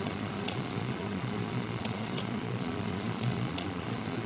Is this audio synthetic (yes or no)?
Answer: yes